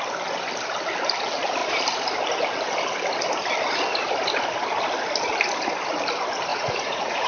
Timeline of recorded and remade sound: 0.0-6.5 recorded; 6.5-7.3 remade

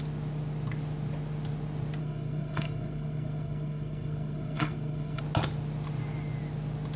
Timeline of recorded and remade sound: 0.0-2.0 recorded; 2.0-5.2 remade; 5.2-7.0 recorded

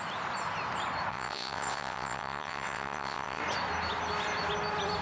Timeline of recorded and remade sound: 0.0-1.1 recorded; 1.1-3.4 remade; 3.4-5.0 recorded

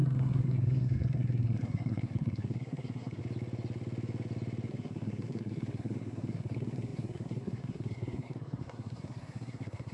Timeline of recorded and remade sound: 0.0-3.2 remade; 3.2-4.7 recorded; 4.7-9.9 remade

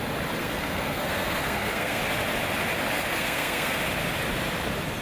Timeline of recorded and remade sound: 0.0-0.4 recorded; 0.4-2.0 remade; 2.0-3.1 recorded; 3.1-3.8 remade; 3.8-5.0 recorded

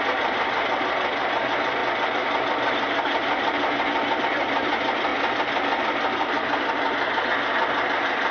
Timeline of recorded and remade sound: 0.0-8.3 recorded

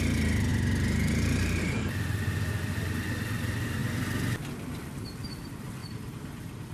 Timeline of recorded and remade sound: 0.0-0.5 recorded; 0.5-1.6 remade; 1.6-5.8 recorded; 5.8-6.7 remade